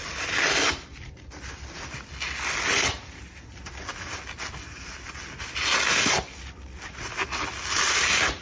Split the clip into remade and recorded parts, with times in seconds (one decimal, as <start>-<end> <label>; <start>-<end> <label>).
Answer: 0.0-8.4 recorded